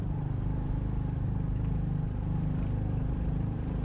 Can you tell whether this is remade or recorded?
recorded